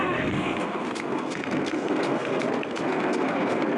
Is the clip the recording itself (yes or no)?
no